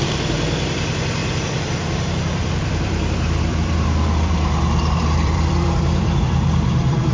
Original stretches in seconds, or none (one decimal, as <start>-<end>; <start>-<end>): none